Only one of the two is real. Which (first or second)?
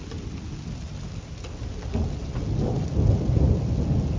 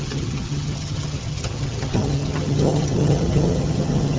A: first